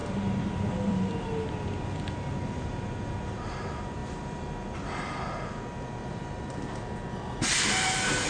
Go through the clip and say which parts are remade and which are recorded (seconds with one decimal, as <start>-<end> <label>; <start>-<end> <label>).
0.0-1.1 remade; 1.1-8.3 recorded